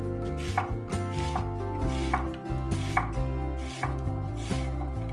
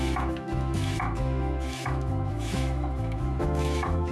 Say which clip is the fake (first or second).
second